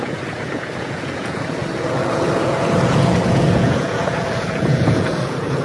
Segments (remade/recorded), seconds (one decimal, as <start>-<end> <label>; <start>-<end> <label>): 0.0-5.6 remade